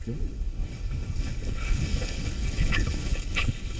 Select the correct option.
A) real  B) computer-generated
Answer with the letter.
B